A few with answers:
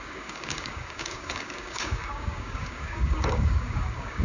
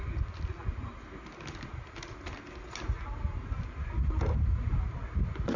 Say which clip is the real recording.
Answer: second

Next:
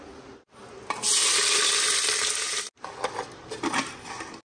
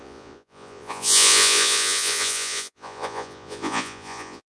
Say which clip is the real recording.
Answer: first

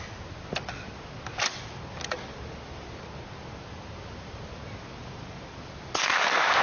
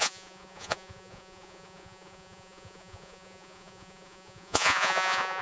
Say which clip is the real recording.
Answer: first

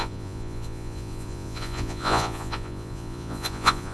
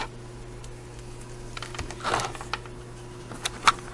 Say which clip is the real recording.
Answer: second